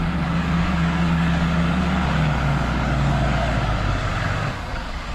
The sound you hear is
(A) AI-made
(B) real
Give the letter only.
A